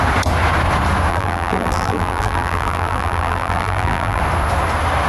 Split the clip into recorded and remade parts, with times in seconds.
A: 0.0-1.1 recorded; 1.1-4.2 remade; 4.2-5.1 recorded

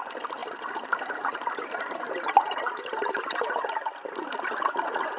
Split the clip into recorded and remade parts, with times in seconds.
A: 0.0-0.4 recorded; 0.4-3.5 remade; 3.5-5.2 recorded

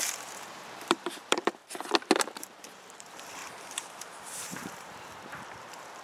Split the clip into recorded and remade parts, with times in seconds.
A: 0.0-1.6 remade; 1.6-2.4 recorded; 2.4-6.0 remade

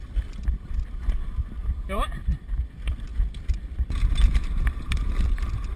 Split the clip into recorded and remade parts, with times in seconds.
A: 0.0-1.6 recorded; 1.6-2.4 remade; 2.4-5.8 recorded

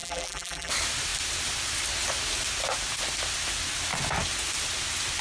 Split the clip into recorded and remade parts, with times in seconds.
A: 0.0-0.7 remade; 0.7-5.2 recorded

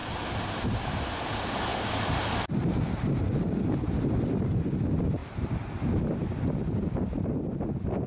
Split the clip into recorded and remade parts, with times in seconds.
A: 0.0-0.8 remade; 0.8-1.7 recorded; 1.7-3.6 remade; 3.6-8.1 recorded

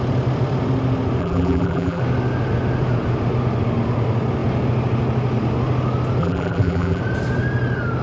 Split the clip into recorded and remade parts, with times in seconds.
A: 0.0-1.2 recorded; 1.2-2.0 remade; 2.0-6.2 recorded; 6.2-7.0 remade; 7.0-8.0 recorded

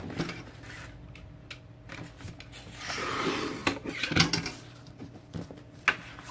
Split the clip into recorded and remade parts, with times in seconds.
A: 0.0-6.3 recorded